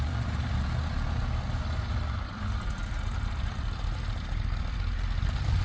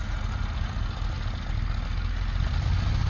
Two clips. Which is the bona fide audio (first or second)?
second